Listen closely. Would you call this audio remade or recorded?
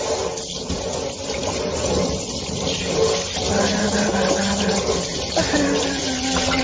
recorded